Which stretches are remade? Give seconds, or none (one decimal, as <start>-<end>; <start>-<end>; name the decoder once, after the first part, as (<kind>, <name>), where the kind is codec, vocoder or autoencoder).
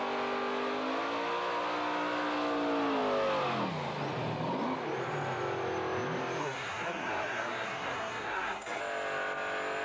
6.4-8.8 (codec, SNAC)